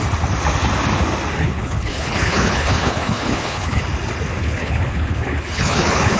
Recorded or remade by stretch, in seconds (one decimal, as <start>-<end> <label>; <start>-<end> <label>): 0.0-1.4 recorded; 1.4-3.8 remade; 3.8-4.4 recorded; 4.4-6.2 remade